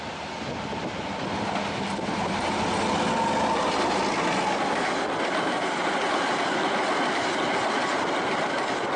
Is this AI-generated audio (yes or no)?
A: no